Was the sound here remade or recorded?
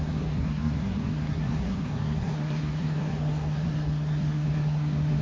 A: remade